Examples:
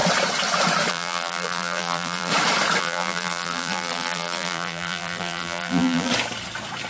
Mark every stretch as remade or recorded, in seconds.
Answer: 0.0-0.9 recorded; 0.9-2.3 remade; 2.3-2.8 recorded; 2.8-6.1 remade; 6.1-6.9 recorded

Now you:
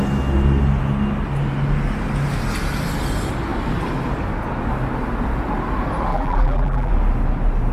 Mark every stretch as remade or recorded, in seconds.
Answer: 0.0-6.1 recorded; 6.1-6.9 remade; 6.9-7.7 recorded